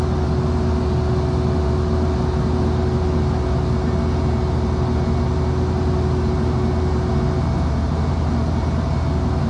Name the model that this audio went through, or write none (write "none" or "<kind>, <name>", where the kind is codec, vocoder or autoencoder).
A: none